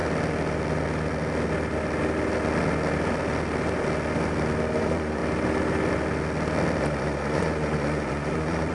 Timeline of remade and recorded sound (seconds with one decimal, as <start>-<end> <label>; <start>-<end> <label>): 0.0-4.8 recorded; 4.8-5.2 remade; 5.2-6.8 recorded; 6.8-8.7 remade